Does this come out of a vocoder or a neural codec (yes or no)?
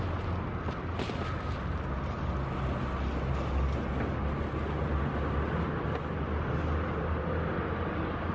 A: no